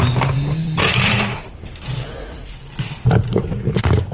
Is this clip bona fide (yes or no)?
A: no